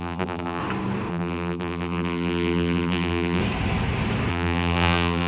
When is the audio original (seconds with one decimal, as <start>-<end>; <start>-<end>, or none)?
0.6-1.1; 3.4-4.3